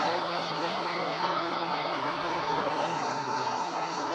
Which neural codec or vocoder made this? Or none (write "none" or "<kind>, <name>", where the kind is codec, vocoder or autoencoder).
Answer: codec, SNAC